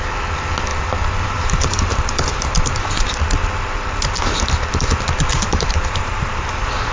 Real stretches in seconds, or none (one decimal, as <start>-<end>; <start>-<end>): 0.0-0.7; 3.2-5.3